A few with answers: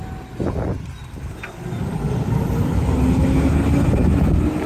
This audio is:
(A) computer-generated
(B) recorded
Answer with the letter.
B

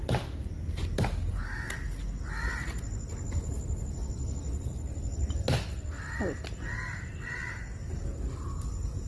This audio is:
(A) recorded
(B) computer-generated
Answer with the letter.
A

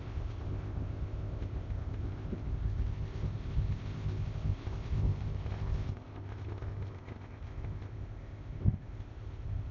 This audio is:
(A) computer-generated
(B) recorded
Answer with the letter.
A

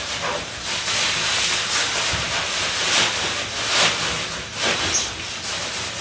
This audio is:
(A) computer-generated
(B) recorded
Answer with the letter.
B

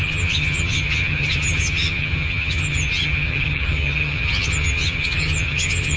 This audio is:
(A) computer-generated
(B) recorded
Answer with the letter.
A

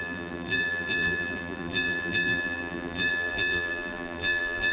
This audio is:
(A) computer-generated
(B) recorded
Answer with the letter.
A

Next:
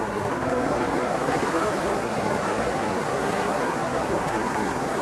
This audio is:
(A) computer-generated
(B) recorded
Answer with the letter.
A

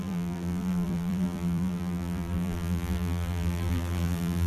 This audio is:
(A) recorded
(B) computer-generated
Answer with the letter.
B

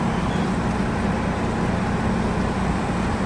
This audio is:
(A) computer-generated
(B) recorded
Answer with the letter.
B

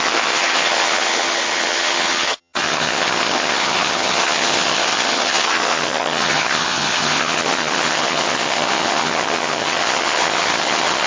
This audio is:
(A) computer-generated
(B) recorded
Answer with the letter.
A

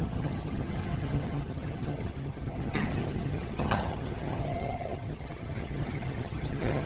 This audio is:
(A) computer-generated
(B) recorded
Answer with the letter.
A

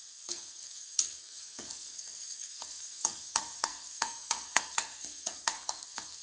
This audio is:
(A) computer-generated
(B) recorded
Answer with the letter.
A